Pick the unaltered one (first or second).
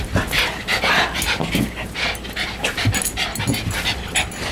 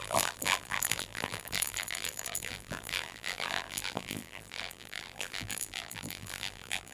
first